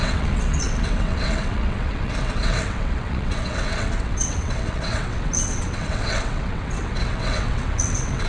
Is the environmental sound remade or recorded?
remade